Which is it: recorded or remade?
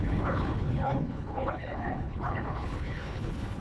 remade